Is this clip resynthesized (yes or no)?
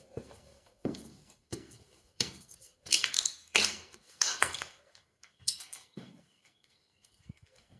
yes